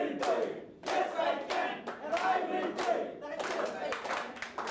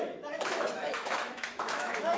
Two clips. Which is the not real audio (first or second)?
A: second